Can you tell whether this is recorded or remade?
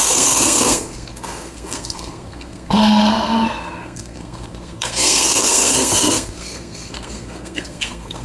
remade